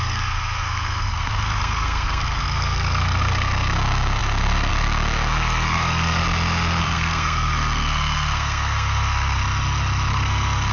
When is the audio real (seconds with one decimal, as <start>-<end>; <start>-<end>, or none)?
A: 6.2-6.8; 9.4-10.1